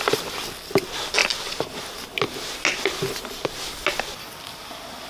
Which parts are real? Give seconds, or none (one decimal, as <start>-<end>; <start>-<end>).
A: 0.0-5.1